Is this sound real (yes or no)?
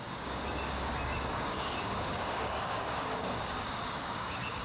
no